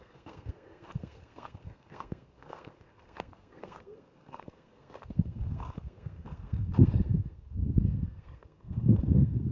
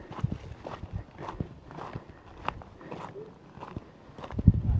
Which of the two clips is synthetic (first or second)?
first